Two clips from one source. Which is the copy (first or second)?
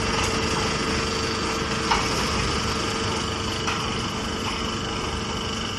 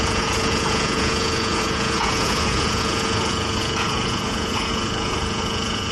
second